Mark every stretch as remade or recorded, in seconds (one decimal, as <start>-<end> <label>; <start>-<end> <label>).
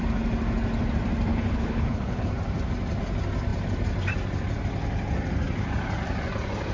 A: 0.0-1.3 recorded; 1.3-2.3 remade; 2.3-6.7 recorded